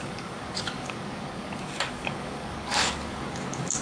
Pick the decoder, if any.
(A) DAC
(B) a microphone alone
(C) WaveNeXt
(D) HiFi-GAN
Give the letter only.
A